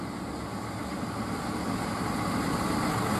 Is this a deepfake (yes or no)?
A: no